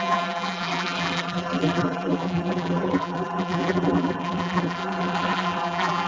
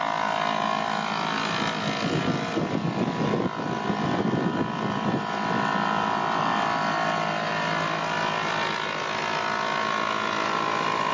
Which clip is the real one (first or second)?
second